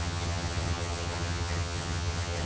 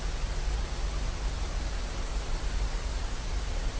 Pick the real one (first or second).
second